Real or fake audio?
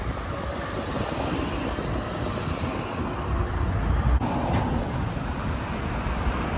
real